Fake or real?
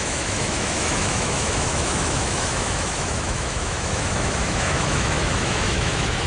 fake